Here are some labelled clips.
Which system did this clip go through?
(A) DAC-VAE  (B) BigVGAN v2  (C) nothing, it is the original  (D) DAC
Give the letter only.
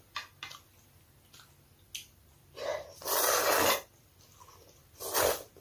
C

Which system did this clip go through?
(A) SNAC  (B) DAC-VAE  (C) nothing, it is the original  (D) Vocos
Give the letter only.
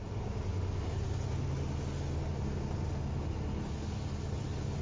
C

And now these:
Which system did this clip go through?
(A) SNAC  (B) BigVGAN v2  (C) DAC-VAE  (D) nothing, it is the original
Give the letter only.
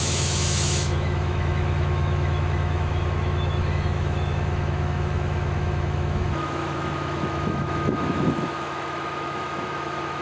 C